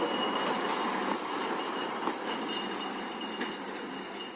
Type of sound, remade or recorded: recorded